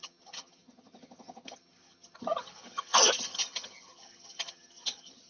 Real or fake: fake